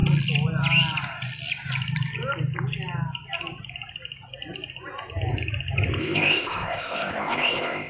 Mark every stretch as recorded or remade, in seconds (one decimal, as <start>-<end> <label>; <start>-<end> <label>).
0.0-6.0 recorded; 6.0-7.9 remade

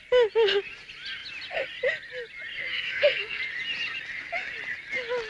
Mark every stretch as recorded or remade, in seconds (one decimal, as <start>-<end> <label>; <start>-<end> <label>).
0.0-2.7 recorded; 2.7-3.4 remade; 3.4-5.3 recorded

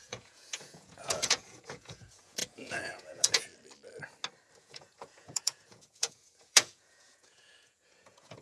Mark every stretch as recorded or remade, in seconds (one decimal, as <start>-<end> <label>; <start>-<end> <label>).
0.0-3.5 remade; 3.5-4.6 recorded; 4.6-8.4 remade

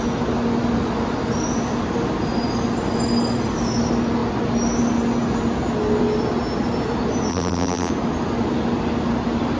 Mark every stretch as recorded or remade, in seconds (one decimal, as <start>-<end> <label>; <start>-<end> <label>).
0.0-7.3 recorded; 7.3-7.9 remade; 7.9-9.6 recorded

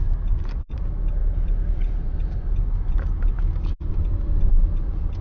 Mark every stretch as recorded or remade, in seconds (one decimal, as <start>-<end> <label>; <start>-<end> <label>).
0.0-5.2 recorded